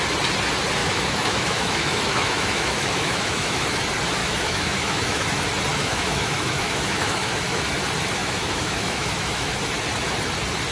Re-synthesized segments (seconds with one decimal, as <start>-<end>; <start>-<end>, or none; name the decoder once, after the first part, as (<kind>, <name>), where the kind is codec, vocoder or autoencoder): 0.8-3.8 (autoencoder, DAC-VAE); 4.2-5.3; 5.7-7.7; 8.2-9.5